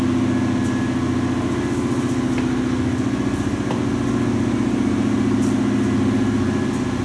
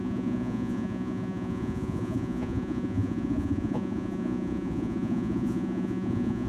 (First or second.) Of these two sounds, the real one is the first